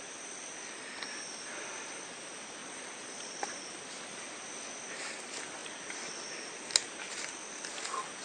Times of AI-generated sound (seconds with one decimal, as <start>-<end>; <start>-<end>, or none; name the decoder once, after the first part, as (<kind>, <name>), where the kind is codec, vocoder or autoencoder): 2.6-4.3 (vocoder, BigVGAN v2)

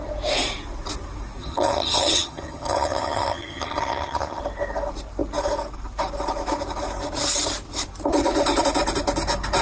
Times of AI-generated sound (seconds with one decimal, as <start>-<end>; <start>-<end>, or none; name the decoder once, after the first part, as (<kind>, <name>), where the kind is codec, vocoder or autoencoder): 1.4-4.4 (vocoder, HiFi-GAN)